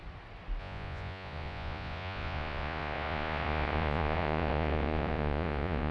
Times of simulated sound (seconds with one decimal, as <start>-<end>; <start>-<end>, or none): 0.6-5.9